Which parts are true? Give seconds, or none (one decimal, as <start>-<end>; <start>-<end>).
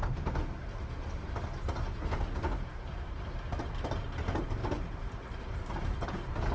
0.7-2.4